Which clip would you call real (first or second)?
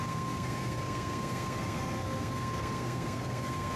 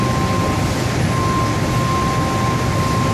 second